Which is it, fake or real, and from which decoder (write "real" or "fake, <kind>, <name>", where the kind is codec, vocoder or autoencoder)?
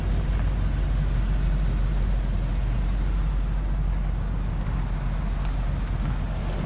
real